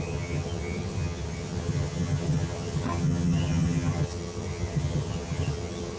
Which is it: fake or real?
fake